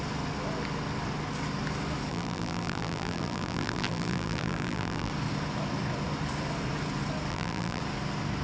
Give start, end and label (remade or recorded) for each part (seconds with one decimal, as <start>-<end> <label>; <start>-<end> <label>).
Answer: 0.0-2.1 recorded; 2.1-5.1 remade; 5.1-7.3 recorded; 7.3-7.8 remade; 7.8-8.4 recorded